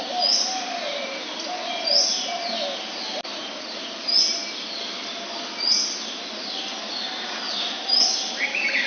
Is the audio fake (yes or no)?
no